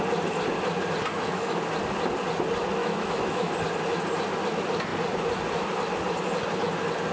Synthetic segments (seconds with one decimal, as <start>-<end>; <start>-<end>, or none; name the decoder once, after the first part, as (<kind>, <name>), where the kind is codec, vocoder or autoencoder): 1.1-1.6 (autoencoder, DAC-VAE); 2.8-3.5